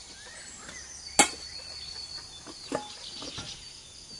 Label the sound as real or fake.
real